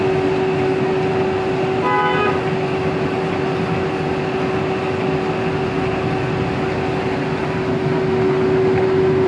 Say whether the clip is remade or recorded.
recorded